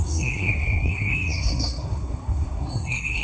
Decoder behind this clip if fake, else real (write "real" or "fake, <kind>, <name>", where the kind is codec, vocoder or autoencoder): fake, codec, SNAC